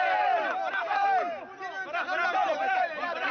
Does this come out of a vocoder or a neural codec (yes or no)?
no